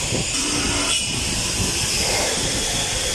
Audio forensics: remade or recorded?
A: recorded